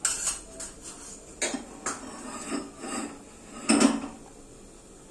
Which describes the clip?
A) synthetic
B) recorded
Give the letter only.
B